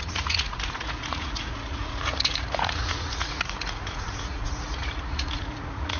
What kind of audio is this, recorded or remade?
remade